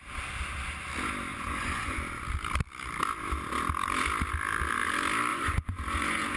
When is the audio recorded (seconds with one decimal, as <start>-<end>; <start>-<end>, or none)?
0.0-1.3; 2.0-5.3